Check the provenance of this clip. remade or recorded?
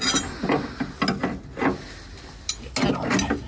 recorded